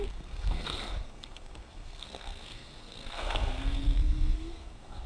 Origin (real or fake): fake